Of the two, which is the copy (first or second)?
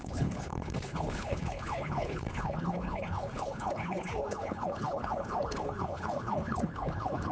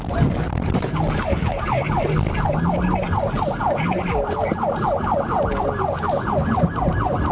first